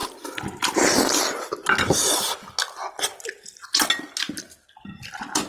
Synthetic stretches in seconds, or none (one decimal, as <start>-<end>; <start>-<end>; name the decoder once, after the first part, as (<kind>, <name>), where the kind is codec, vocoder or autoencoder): none